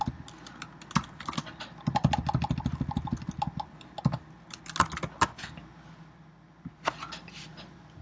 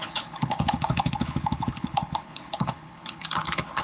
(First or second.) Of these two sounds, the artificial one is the second